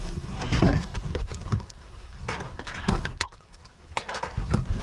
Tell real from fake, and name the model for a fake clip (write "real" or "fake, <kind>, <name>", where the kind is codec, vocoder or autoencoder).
fake, codec, SNAC